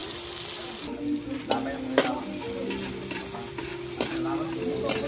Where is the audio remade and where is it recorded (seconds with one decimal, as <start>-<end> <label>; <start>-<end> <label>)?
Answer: 0.0-5.1 recorded